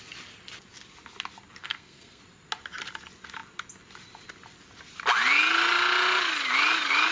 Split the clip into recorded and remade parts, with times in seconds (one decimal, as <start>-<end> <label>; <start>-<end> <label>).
0.0-1.6 recorded; 1.6-2.2 remade; 2.2-7.1 recorded